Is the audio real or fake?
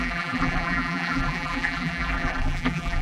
fake